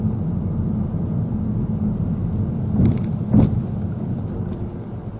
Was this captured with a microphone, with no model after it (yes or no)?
yes